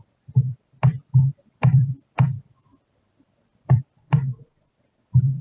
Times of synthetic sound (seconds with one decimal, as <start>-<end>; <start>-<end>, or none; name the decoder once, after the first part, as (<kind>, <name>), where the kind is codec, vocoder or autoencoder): 4.0-4.7 (vocoder, Vocos)